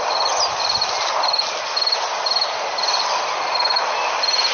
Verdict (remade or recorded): recorded